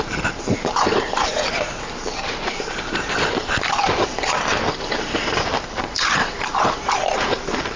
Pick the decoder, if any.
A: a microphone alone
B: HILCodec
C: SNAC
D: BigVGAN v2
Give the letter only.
D